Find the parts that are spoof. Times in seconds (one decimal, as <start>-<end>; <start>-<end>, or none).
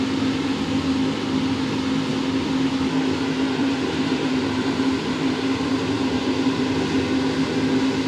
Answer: 3.6-6.7